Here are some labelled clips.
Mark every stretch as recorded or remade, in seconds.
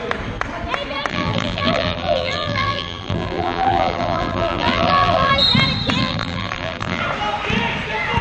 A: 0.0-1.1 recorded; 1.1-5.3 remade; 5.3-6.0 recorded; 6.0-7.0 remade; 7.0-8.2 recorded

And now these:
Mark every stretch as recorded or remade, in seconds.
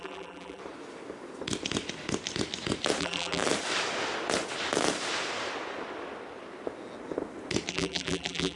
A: 0.0-0.6 remade; 0.6-3.0 recorded; 3.0-3.4 remade; 3.4-7.7 recorded; 7.7-8.6 remade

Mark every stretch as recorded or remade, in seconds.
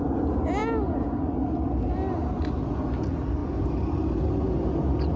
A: 0.0-5.2 recorded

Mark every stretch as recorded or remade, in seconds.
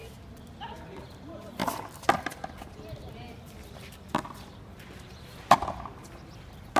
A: 0.0-1.6 recorded; 1.6-5.4 remade; 5.4-6.8 recorded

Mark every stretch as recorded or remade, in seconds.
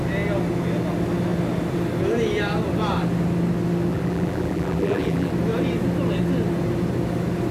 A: 0.0-3.9 recorded; 3.9-5.3 remade; 5.3-7.5 recorded